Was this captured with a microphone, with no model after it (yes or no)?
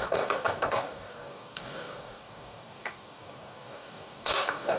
no